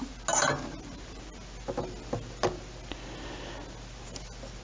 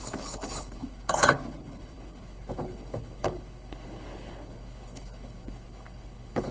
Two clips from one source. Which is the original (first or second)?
first